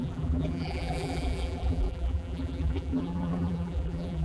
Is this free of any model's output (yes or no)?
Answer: no